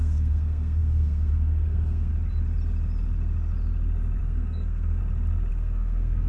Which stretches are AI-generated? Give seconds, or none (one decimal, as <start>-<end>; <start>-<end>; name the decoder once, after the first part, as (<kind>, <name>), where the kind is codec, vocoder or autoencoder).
0.0-2.1 (codec, SNAC); 4.2-5.0; 5.5-6.3